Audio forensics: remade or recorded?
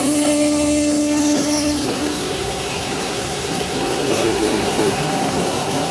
remade